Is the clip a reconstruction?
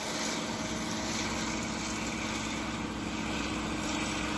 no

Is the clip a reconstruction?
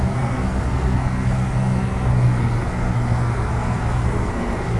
yes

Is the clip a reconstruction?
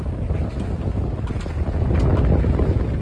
no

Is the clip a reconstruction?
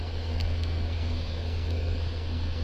yes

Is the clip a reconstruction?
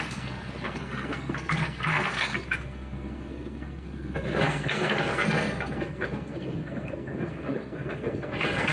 yes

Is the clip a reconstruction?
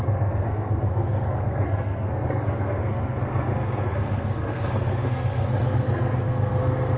yes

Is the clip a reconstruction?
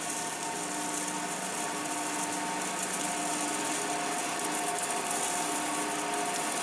no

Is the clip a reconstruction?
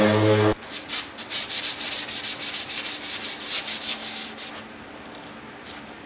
no